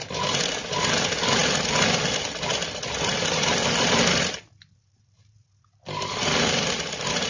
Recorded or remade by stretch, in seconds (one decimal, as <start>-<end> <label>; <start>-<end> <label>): 0.0-7.3 recorded